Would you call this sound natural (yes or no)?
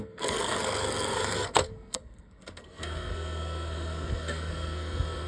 no